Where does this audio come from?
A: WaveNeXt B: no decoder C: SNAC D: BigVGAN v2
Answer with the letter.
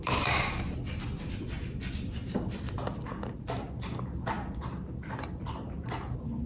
B